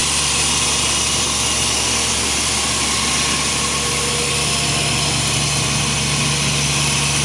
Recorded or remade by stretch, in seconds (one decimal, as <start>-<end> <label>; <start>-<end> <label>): 0.0-7.2 recorded